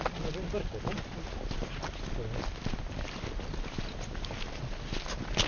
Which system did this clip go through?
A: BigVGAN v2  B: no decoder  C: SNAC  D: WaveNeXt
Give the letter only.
B